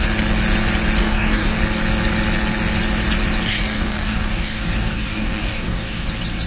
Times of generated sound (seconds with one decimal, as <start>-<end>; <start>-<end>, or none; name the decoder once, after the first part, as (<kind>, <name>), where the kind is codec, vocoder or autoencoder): 1.0-1.6 (codec, DAC); 3.5-6.1